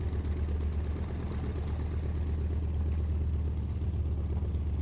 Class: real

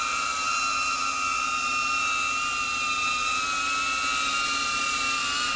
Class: real